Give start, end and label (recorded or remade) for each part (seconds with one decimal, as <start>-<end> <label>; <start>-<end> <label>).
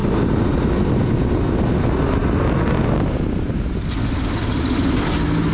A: 0.0-5.5 recorded